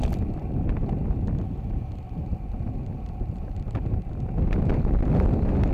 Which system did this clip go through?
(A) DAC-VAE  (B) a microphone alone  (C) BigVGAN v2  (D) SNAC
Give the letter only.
B